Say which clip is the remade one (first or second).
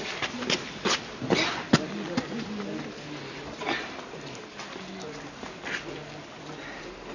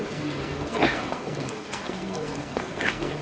second